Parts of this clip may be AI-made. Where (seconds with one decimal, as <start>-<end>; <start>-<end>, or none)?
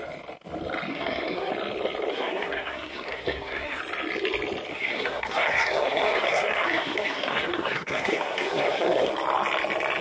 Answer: 0.9-1.5; 2.1-3.8; 4.7-9.1